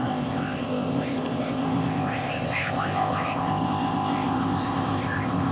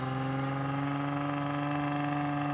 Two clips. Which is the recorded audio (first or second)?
second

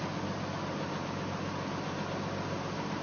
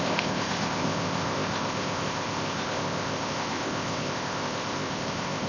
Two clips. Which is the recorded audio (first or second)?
first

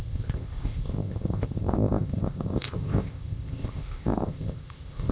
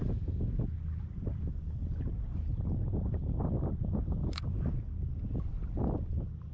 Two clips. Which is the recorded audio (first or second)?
second